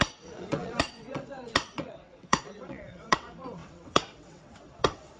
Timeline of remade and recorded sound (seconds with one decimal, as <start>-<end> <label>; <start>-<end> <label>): 0.0-5.2 remade